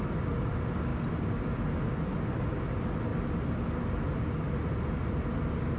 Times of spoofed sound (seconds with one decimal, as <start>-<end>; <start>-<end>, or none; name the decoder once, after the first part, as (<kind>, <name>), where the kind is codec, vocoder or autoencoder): none